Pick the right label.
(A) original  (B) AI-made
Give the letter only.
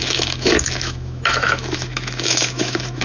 B